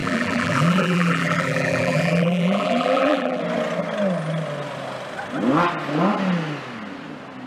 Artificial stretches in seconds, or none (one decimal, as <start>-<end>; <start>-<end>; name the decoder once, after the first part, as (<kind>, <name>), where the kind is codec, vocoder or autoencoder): 0.0-3.4 (vocoder, BigVGAN v2)